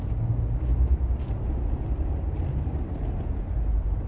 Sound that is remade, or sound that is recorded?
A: recorded